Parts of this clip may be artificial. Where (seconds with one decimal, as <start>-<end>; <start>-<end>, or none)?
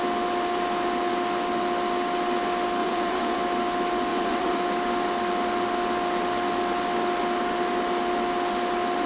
2.8-3.4; 4.1-4.6